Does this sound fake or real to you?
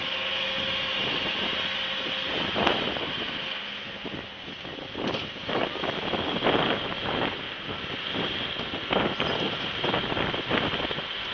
real